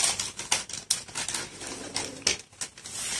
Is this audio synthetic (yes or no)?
no